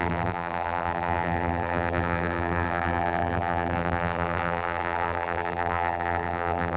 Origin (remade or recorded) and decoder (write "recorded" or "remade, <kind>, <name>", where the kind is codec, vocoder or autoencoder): remade, vocoder, BigVGAN v2